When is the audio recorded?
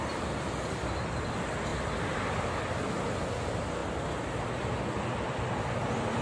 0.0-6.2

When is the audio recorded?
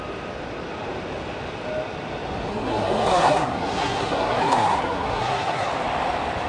0.0-2.5; 5.7-6.5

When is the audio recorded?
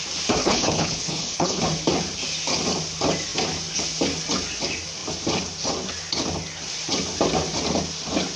0.0-0.4; 1.6-8.4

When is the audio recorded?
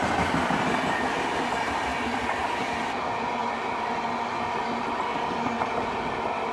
0.0-6.5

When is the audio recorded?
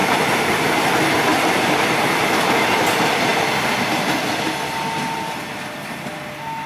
0.0-1.3; 2.2-6.7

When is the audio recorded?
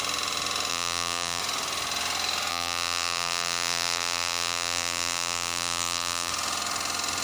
0.0-0.7; 1.4-2.5; 6.3-7.2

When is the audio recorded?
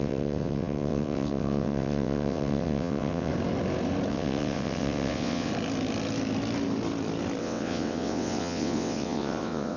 3.3-4.1; 5.5-7.4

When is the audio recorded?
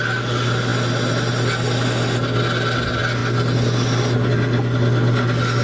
0.0-5.6